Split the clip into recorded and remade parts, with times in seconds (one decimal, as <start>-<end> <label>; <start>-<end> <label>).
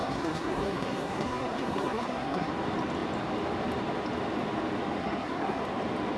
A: 0.0-2.5 remade; 2.5-5.0 recorded; 5.0-5.6 remade; 5.6-6.2 recorded